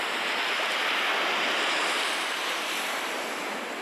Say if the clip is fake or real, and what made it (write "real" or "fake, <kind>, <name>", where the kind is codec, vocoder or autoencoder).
real